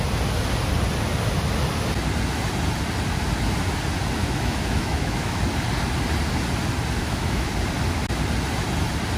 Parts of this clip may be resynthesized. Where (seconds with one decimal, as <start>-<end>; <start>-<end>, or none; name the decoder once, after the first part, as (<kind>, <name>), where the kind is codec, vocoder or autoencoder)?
4.2-5.4 (autoencoder, DAC-VAE); 7.0-7.5